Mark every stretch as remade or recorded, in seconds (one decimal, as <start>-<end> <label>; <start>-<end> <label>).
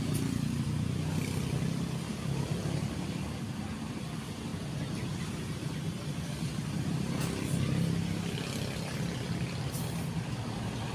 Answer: 0.0-4.5 remade; 4.5-8.2 recorded; 8.2-10.9 remade